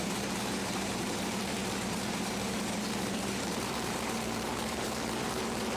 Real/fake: fake